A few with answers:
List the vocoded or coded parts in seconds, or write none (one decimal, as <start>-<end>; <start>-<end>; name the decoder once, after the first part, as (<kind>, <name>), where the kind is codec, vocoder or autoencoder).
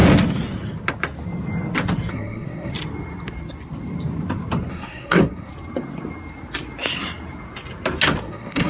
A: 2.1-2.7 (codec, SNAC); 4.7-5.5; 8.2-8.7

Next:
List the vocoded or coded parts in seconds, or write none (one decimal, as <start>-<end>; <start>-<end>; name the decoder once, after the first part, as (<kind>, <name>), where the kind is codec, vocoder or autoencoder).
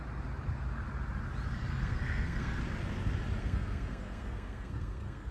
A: 1.7-2.6 (codec, SNAC); 3.4-5.3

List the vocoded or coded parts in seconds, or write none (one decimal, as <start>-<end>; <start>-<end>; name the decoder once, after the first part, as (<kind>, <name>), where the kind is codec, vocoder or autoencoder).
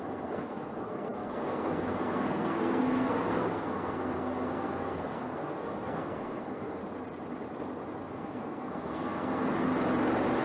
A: 0.0-6.8 (codec, SNAC); 8.1-9.7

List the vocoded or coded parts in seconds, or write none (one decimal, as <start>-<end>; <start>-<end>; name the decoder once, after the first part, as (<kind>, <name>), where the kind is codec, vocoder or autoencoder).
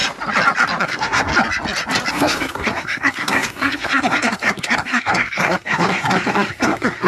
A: 0.8-1.3 (codec, SNAC); 2.1-7.1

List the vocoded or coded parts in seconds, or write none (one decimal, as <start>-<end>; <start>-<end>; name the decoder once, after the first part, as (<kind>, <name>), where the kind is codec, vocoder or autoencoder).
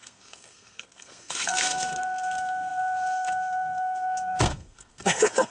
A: 0.0-5.5 (codec, SNAC)